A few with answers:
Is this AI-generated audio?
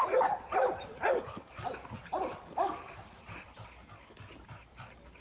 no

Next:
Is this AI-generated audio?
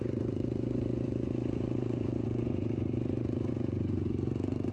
yes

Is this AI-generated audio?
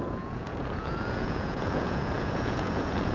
yes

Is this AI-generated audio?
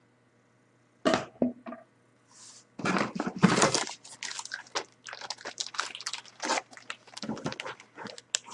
no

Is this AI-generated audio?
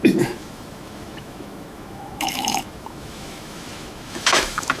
yes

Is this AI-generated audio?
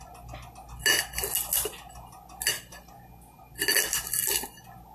no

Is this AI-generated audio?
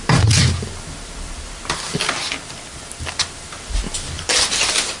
no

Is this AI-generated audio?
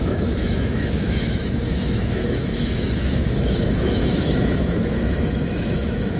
yes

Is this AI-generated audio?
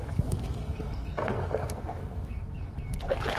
yes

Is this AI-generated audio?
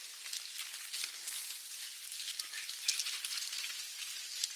no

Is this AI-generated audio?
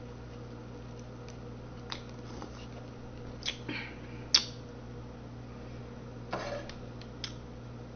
no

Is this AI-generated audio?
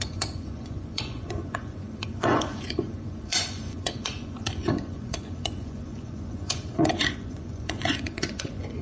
yes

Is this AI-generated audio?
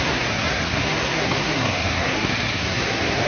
yes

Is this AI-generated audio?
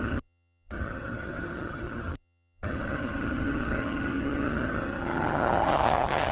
yes